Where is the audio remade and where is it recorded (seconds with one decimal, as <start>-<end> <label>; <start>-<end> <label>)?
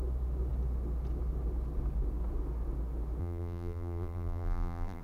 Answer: 0.0-3.2 recorded; 3.2-5.0 remade